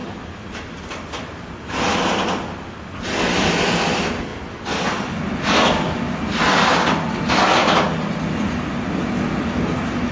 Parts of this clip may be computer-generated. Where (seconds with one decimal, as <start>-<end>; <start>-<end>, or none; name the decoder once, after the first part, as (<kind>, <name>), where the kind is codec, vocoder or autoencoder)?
none